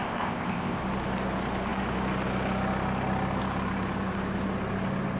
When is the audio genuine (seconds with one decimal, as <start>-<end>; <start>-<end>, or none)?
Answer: 0.8-5.2